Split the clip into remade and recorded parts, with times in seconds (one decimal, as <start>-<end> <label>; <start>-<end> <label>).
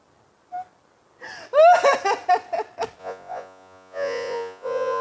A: 0.0-3.0 recorded; 3.0-5.0 remade